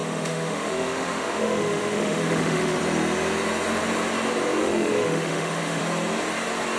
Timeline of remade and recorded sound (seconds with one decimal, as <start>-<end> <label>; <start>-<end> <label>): 0.0-2.8 remade; 2.8-4.6 recorded; 4.6-5.8 remade; 5.8-6.8 recorded